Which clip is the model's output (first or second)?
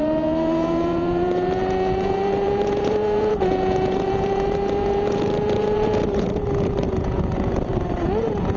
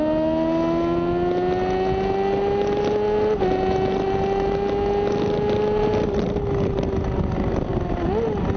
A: first